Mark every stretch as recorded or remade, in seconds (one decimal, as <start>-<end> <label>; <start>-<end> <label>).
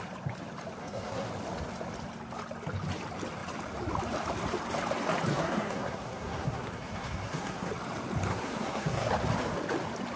0.0-0.8 recorded; 0.8-1.3 remade; 1.3-5.3 recorded; 5.3-7.7 remade; 7.7-8.3 recorded; 8.3-9.1 remade; 9.1-10.2 recorded